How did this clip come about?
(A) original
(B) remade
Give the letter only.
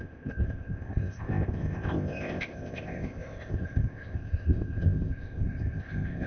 B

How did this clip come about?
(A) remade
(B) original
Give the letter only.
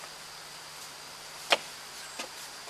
B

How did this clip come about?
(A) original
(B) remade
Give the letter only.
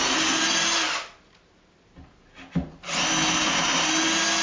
A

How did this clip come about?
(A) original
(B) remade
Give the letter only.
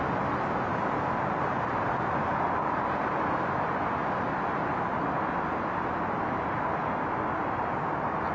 A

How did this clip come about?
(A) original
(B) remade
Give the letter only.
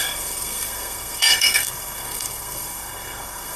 B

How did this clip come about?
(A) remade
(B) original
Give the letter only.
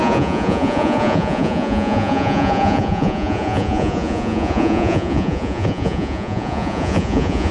A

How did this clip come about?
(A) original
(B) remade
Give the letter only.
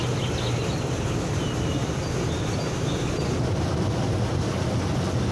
A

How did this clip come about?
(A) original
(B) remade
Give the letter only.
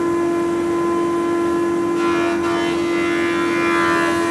A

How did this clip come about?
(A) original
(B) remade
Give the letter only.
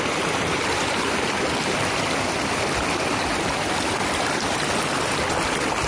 A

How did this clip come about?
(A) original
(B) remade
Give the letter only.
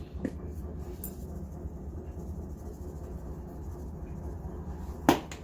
A